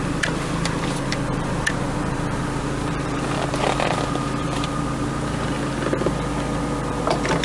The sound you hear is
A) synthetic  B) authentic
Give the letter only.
A